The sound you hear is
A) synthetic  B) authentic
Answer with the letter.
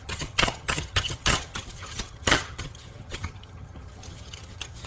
A